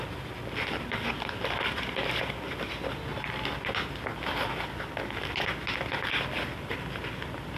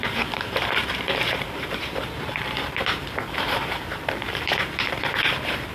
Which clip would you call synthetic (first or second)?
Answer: second